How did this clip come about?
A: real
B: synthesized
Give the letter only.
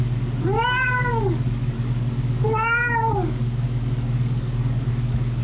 B